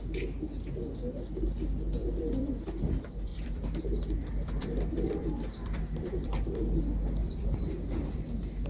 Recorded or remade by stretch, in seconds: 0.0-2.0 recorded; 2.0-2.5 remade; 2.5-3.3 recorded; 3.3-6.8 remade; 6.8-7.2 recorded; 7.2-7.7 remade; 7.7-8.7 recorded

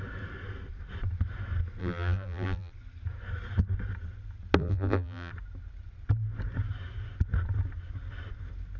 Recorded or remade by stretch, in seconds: 0.0-1.8 recorded; 1.8-2.7 remade; 2.7-4.6 recorded; 4.6-5.3 remade; 5.3-8.8 recorded

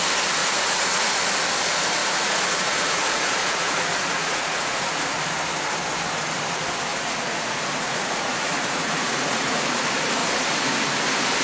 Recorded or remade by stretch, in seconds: 0.0-0.4 recorded; 0.4-1.2 remade; 1.2-2.0 recorded; 2.0-5.2 remade; 5.2-6.9 recorded; 6.9-9.6 remade; 9.6-10.2 recorded; 10.2-10.8 remade; 10.8-11.4 recorded